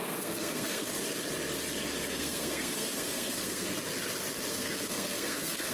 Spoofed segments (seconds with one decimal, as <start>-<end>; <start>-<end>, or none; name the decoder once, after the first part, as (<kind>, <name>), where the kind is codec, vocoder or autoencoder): 0.0-0.9 (codec, SNAC); 2.1-3.7; 4.5-5.7